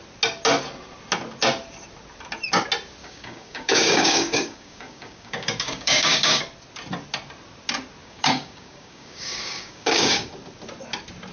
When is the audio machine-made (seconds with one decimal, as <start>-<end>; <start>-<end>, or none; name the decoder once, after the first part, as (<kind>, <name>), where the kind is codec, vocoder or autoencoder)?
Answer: 3.0-6.4 (codec, DAC); 8.0-10.3